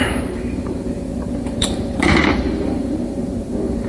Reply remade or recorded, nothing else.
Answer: remade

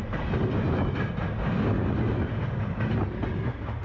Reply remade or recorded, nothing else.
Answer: recorded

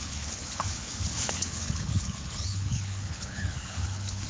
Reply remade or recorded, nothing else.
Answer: remade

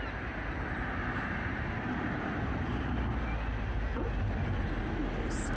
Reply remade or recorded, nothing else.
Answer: recorded